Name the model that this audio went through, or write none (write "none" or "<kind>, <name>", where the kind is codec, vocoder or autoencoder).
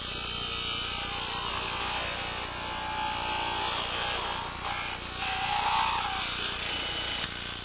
none